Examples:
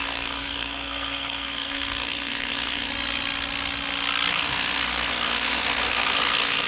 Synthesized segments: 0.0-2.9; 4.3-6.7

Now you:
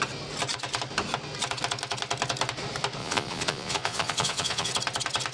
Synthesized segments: 3.0-4.7